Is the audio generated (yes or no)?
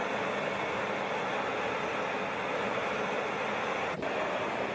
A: no